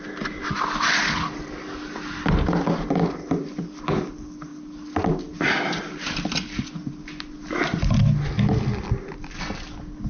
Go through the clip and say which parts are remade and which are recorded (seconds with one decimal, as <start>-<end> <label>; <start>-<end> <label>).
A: 0.0-10.1 recorded